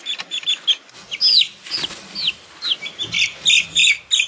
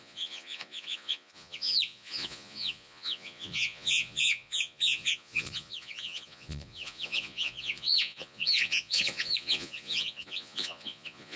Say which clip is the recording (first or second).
first